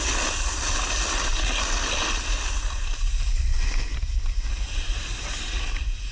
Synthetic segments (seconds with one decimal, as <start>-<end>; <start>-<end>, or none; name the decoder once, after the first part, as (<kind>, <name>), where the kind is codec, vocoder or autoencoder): none